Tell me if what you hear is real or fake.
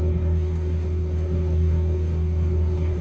fake